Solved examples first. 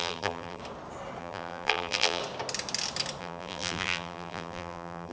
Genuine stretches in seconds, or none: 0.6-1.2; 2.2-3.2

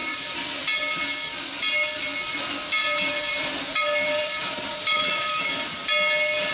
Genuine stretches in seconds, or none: 0.5-2.8; 5.4-6.5

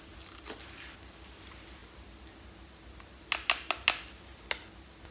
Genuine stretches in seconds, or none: 0.0-1.8; 2.3-5.1

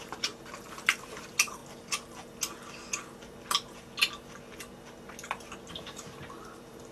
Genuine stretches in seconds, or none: 1.6-5.7

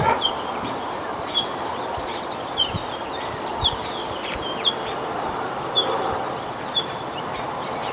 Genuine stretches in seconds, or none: 1.7-3.6

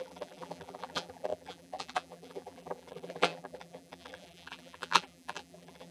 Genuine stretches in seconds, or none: none

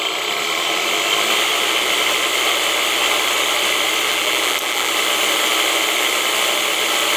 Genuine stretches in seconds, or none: 0.0-4.1; 4.9-7.2